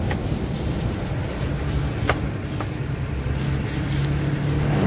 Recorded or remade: recorded